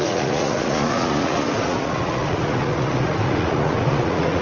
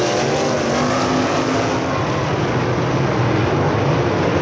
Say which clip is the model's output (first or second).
first